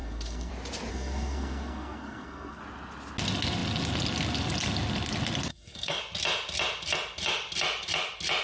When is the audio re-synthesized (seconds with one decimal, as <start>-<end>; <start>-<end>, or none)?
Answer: 0.0-0.5; 0.9-2.6; 5.5-6.0